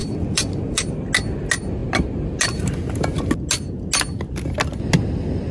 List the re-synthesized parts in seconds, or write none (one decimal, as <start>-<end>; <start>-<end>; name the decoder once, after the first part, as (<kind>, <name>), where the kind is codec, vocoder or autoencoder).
0.0-0.9 (vocoder, BigVGAN v2)